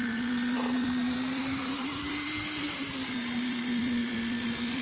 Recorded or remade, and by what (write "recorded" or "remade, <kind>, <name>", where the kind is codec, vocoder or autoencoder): remade, vocoder, BigVGAN v2